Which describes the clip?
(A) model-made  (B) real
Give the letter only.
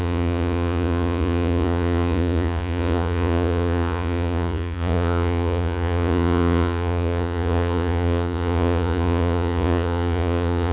A